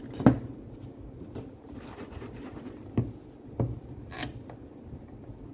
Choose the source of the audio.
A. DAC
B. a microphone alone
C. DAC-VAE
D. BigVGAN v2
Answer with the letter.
B